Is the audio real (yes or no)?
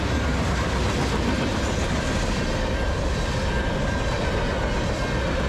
yes